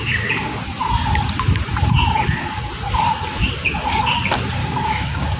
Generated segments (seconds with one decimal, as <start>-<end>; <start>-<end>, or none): 4.6-5.4